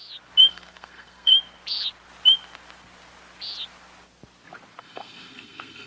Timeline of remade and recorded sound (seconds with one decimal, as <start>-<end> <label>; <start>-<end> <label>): 0.0-0.5 recorded; 0.5-1.3 remade; 1.3-4.8 recorded; 4.8-5.9 remade